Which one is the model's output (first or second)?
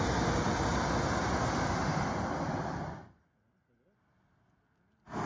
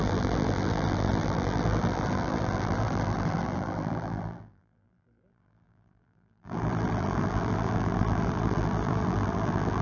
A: second